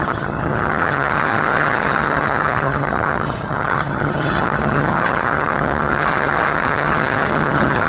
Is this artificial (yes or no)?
yes